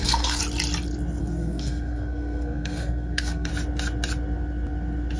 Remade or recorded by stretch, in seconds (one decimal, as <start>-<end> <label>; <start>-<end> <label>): 0.0-0.4 remade; 0.4-1.2 recorded; 1.2-3.5 remade; 3.5-5.2 recorded